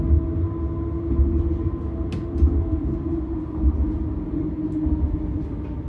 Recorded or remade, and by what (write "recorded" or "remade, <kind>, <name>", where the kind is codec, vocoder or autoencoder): recorded